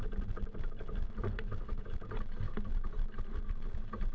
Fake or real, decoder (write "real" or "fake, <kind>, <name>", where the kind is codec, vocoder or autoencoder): fake, vocoder, BigVGAN v2